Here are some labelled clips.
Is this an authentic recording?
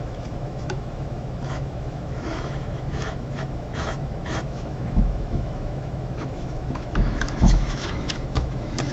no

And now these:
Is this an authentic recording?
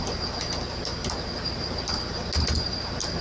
yes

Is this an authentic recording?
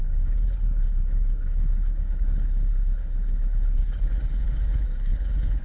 no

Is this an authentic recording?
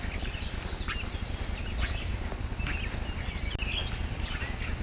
yes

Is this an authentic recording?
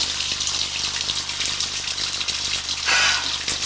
yes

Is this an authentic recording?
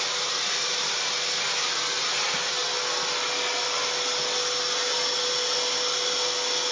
yes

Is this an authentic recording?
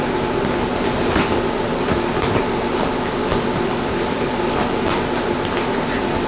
yes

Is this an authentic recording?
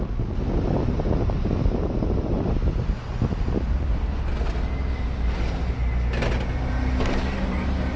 yes